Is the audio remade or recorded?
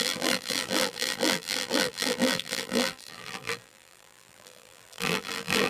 remade